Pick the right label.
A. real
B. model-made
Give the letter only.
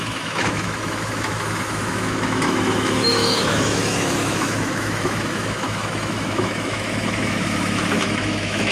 B